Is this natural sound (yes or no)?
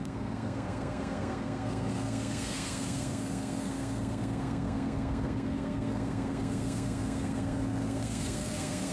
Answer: no